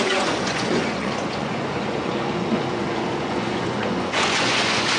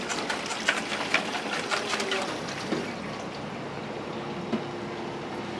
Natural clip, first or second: second